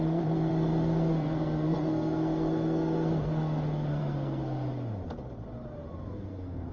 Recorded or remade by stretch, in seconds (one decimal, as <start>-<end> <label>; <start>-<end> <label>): 0.0-4.7 remade; 4.7-6.1 recorded; 6.1-6.7 remade